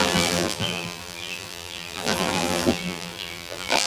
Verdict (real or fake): fake